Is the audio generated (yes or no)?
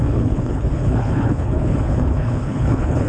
yes